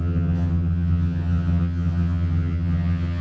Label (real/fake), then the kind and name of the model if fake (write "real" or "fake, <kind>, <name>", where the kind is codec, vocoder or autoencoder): fake, vocoder, HiFi-GAN